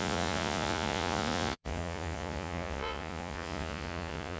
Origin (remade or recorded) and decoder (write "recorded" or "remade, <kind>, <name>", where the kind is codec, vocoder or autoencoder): remade, vocoder, Vocos